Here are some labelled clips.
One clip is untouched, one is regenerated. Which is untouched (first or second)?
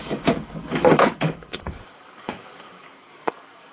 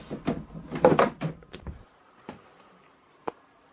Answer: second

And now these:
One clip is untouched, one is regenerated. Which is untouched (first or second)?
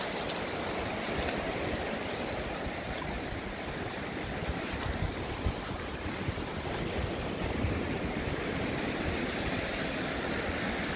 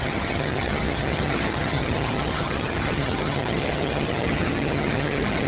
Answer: first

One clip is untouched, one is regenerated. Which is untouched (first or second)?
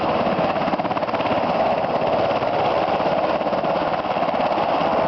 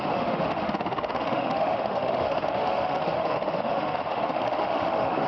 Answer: first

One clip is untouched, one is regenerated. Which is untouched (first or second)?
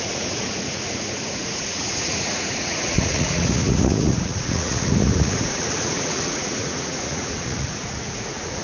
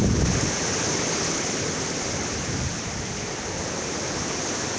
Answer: second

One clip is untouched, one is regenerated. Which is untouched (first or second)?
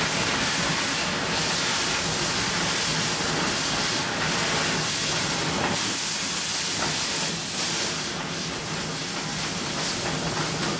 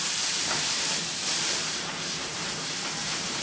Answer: first